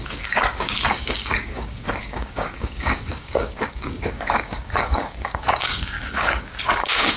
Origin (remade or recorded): remade